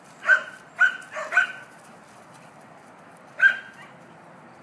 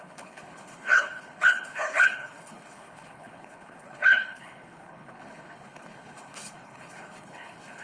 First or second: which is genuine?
first